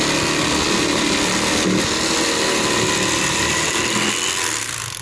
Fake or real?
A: real